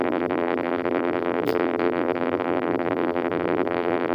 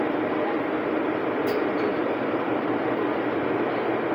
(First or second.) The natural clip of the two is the second